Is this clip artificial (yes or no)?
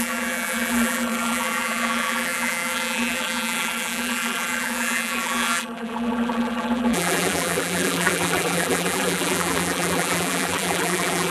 yes